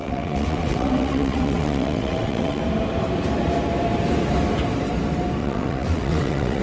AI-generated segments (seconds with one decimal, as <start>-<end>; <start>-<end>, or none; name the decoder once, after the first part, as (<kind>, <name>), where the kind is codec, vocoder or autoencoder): 0.0-2.6 (vocoder, WaveNeXt); 5.4-6.6